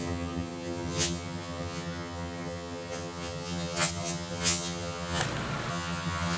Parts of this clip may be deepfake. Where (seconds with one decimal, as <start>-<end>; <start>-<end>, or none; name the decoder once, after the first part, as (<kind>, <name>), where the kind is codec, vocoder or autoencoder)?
0.0-5.2 (vocoder, HiFi-GAN); 5.7-6.4